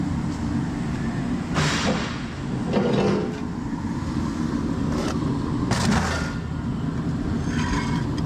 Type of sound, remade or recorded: recorded